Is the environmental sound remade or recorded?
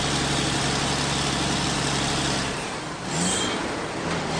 recorded